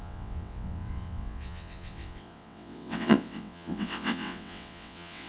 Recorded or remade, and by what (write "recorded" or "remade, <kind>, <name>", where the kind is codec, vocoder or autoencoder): remade, vocoder, WaveNeXt